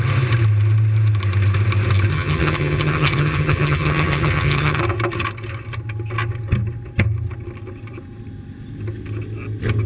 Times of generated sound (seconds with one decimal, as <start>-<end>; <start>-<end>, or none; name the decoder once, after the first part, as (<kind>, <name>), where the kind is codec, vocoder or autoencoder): 2.1-4.8 (vocoder, HiFi-GAN)